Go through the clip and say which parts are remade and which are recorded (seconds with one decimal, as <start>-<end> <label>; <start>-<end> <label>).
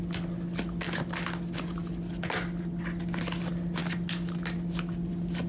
0.0-5.5 recorded